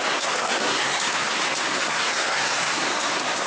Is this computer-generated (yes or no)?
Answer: yes